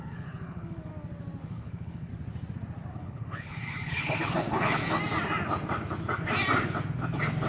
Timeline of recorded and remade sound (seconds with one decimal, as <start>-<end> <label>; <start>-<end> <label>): 0.0-0.9 remade; 0.9-1.4 recorded; 1.4-2.1 remade; 2.1-2.9 recorded; 2.9-4.8 remade; 4.8-7.5 recorded